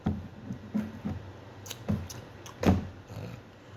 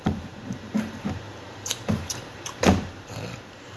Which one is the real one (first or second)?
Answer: first